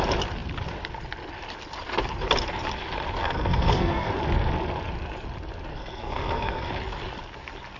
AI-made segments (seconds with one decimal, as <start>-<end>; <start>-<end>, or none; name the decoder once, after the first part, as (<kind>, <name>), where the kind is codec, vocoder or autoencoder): 3.2-4.1 (codec, SNAC); 5.7-6.7